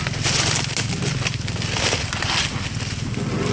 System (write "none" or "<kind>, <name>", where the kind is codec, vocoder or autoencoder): none